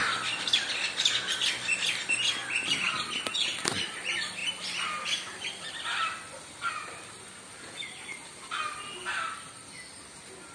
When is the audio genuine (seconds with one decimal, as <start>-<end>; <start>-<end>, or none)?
0.0-2.4; 3.0-4.4; 6.7-10.5